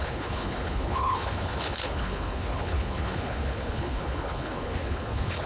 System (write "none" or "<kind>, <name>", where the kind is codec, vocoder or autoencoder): codec, HILCodec